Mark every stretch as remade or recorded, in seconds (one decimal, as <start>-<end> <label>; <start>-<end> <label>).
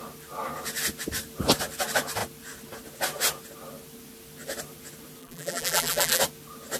0.0-5.2 recorded; 5.2-6.2 remade; 6.2-6.8 recorded